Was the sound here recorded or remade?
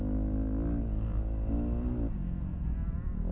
recorded